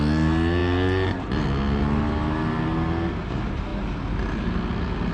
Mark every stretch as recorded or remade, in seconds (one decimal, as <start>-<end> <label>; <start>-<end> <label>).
0.0-5.1 recorded

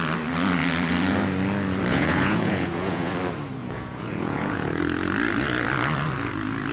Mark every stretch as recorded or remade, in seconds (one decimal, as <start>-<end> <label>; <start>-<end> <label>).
0.0-1.9 recorded; 1.9-3.1 remade; 3.1-3.6 recorded; 3.6-4.8 remade; 4.8-6.7 recorded

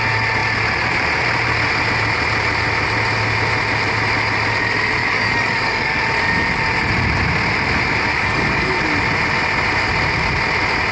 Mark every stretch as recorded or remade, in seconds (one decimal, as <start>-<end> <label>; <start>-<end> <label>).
0.0-5.0 recorded; 5.0-6.0 remade; 6.0-8.1 recorded; 8.1-8.8 remade; 8.8-10.9 recorded